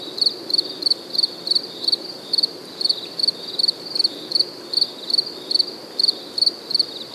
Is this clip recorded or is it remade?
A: recorded